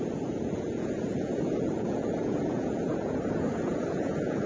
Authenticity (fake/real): fake